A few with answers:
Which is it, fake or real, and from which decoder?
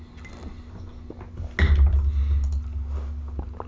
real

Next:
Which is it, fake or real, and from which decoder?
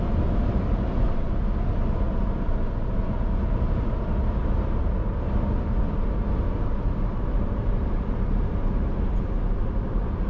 real